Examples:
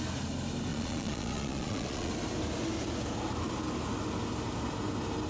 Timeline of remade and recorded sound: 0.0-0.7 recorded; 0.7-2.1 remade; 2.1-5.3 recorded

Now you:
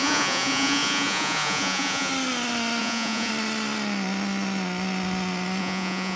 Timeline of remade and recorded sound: 0.0-2.1 remade; 2.1-2.8 recorded; 2.8-3.3 remade; 3.3-5.6 recorded; 5.6-6.2 remade

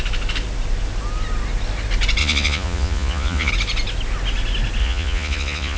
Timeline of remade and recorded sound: 0.0-2.2 recorded; 2.2-3.5 remade; 3.5-4.8 recorded; 4.8-5.8 remade

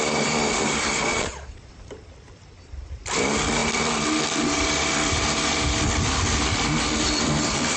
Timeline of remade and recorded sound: 0.0-1.1 recorded; 1.1-1.7 remade; 1.7-7.8 recorded

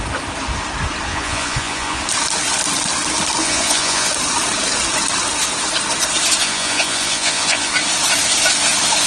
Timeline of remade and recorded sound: 0.0-1.1 recorded; 1.1-2.0 remade; 2.0-3.4 recorded; 3.4-4.1 remade; 4.1-6.4 recorded; 6.4-7.7 remade; 7.7-9.1 recorded

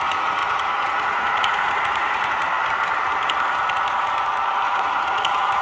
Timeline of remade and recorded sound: 0.0-2.4 remade; 2.4-4.7 recorded; 4.7-5.6 remade

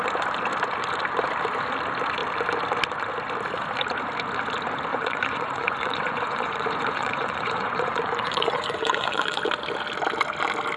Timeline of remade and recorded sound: 0.0-4.9 recorded; 4.9-9.4 remade; 9.4-10.8 recorded

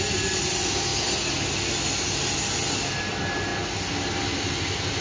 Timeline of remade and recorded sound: 0.0-5.0 recorded